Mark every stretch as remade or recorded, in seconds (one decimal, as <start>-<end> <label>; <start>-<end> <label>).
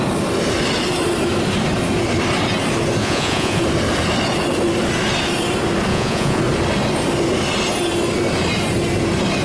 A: 0.0-3.0 recorded; 3.0-3.6 remade; 3.6-5.9 recorded; 5.9-6.4 remade; 6.4-9.4 recorded